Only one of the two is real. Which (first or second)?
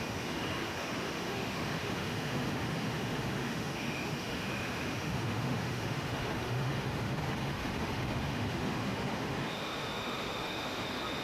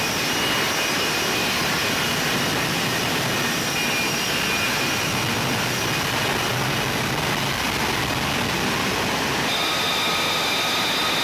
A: second